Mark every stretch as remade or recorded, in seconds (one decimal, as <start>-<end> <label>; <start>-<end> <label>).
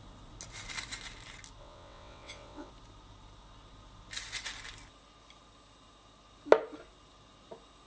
0.0-1.6 recorded; 1.6-2.7 remade; 2.7-7.9 recorded